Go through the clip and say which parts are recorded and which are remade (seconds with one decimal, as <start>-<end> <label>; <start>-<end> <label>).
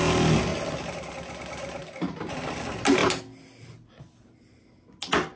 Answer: 0.0-5.4 recorded